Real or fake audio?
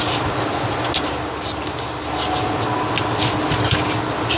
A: real